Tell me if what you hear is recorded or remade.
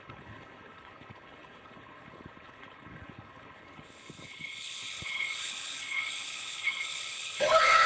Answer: remade